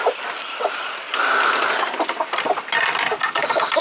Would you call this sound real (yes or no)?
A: yes